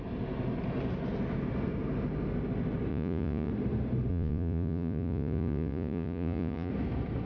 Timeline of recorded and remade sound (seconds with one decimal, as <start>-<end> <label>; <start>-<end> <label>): 0.0-2.9 recorded; 2.9-3.5 remade; 3.5-4.1 recorded; 4.1-6.7 remade; 6.7-7.3 recorded